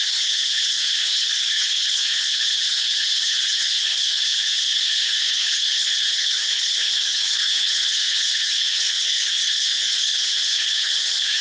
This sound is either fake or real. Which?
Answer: fake